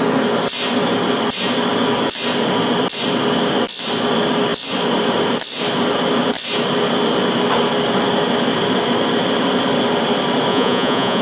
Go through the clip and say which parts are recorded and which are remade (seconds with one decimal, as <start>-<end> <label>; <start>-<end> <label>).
0.0-10.5 recorded; 10.5-11.2 remade